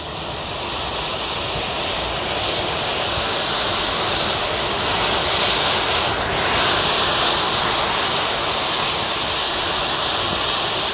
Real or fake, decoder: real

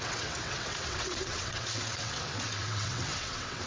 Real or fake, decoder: fake, vocoder, WaveNeXt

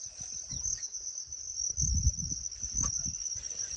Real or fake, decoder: real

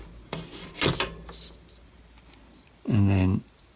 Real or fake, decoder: real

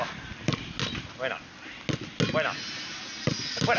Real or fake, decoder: real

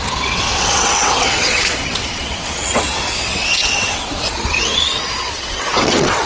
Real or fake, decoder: fake, vocoder, WaveNeXt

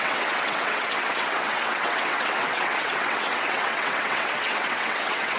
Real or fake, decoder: fake, vocoder, WaveNeXt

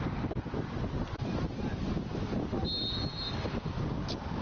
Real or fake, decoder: real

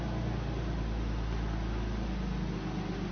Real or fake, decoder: real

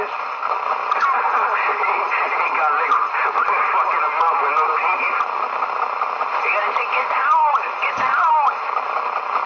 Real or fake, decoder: real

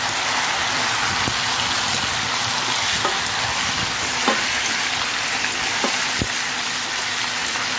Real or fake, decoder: real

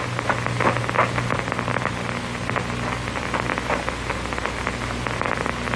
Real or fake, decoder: real